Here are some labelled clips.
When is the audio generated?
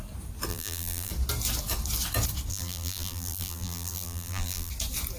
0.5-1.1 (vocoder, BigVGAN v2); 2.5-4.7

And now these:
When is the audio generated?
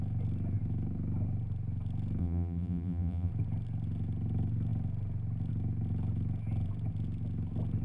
2.2-3.3 (vocoder, BigVGAN v2)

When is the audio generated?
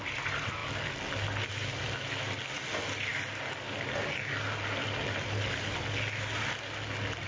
none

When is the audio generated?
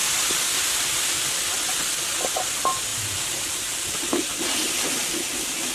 0.0-1.8 (vocoder, BigVGAN v2); 2.9-4.0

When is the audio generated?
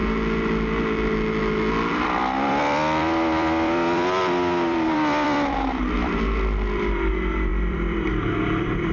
1.9-7.1 (vocoder, BigVGAN v2); 7.5-8.9